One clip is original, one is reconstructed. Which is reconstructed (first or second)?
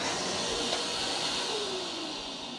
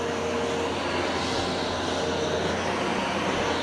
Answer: first